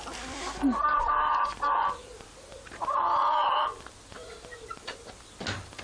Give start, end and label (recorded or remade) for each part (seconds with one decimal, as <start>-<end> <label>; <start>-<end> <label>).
0.0-0.9 recorded; 0.9-2.1 remade; 2.1-5.8 recorded